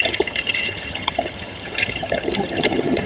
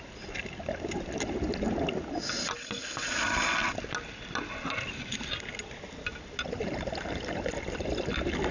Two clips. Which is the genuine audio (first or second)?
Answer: second